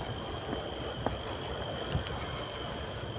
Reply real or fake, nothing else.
real